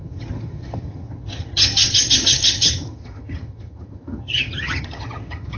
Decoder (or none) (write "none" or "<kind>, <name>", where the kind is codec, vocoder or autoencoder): vocoder, HiFi-GAN